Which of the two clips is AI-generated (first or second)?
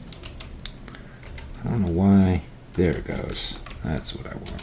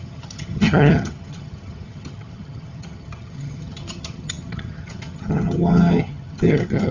second